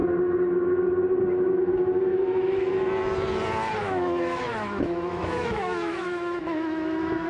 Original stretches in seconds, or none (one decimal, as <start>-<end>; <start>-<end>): 0.0-2.1; 2.7-3.8